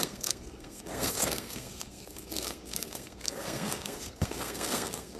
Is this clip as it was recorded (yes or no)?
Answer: no